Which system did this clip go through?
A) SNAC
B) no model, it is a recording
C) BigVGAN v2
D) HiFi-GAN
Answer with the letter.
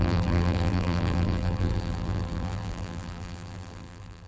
C